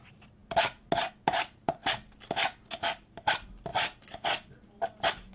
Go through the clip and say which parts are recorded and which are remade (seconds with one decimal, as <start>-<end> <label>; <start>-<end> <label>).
0.0-5.3 recorded